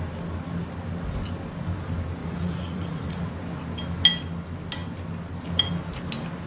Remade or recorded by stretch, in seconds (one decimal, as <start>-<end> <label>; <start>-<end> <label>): 0.0-2.2 recorded; 2.2-3.3 remade; 3.3-6.5 recorded